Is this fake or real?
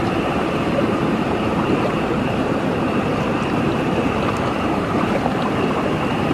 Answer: fake